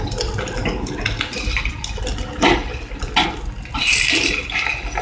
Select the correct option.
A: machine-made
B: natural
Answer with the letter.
B